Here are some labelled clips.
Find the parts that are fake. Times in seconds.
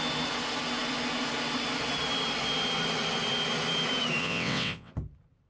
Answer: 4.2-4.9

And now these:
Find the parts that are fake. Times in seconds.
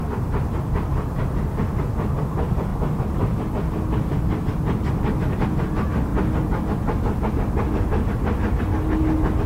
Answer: 0.0-1.6; 2.7-3.5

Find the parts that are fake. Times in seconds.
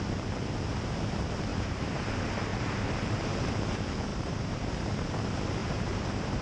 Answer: 1.5-2.1; 2.5-3.3; 4.1-4.7; 5.6-6.4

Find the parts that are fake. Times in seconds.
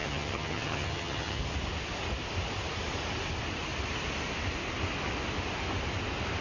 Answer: 0.0-1.4